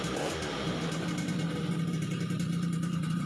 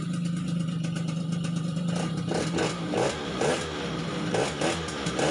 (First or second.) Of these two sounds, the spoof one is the first